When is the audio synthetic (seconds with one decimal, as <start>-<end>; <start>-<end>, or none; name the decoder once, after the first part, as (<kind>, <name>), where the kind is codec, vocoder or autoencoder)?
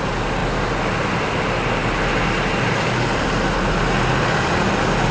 none